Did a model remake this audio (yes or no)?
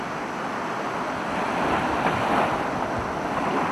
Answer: no